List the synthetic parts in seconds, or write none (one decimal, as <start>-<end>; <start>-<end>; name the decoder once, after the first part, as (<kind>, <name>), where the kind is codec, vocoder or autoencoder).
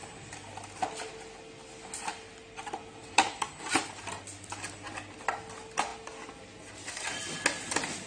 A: none